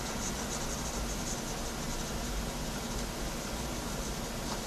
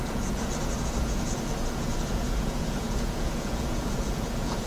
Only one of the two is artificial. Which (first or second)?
second